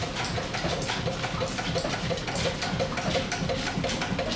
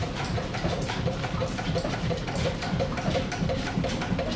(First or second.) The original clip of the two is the first